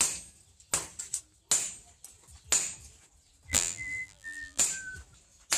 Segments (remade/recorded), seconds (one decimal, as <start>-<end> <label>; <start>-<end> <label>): 0.0-3.5 recorded; 3.5-4.6 remade; 4.6-5.6 recorded